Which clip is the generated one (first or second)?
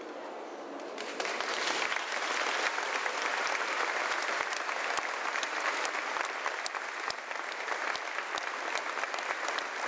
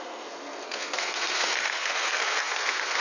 second